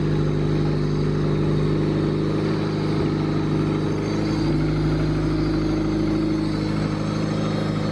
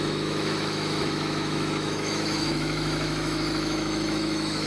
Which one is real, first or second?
first